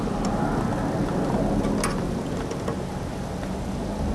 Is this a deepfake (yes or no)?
no